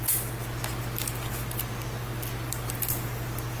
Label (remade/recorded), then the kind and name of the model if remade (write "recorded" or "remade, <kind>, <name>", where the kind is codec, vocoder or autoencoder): recorded